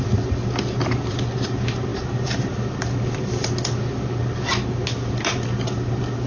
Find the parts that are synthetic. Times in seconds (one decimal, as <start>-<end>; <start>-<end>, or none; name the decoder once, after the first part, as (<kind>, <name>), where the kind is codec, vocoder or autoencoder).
1.9-2.5 (vocoder, BigVGAN v2)